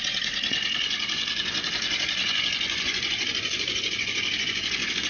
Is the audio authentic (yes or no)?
no